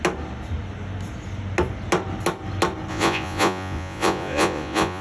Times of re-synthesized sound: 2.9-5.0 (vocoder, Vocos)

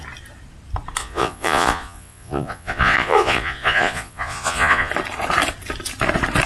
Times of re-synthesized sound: 1.0-4.9 (vocoder, Vocos)

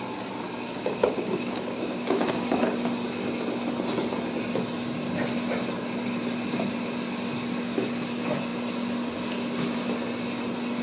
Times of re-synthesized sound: 0.7-2.6 (codec, DAC)

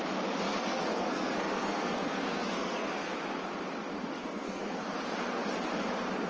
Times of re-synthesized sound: 0.7-3.1 (codec, SNAC); 4.2-4.8

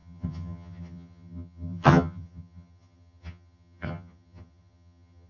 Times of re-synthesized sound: 0.0-5.3 (vocoder, HiFi-GAN)